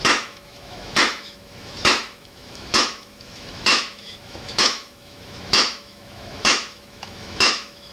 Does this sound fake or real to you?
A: fake